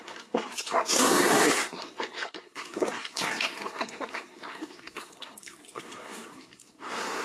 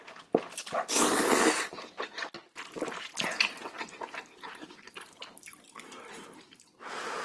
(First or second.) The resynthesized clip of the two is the first